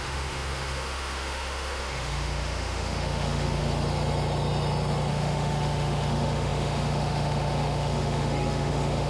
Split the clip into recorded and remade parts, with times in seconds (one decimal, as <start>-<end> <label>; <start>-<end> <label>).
0.0-3.6 remade; 3.6-5.1 recorded; 5.1-9.1 remade